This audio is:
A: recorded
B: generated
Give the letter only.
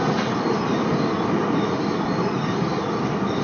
A